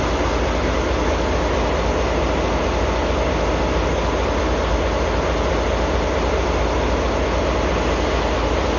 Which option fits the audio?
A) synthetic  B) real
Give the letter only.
B